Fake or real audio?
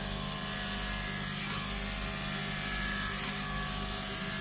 real